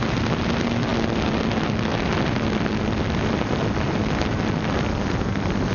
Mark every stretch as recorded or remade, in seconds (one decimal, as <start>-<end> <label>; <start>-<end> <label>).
0.0-5.7 recorded